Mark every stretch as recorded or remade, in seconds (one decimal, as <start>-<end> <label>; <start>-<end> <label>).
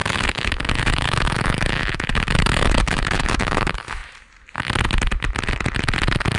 0.0-4.0 remade; 4.0-6.4 recorded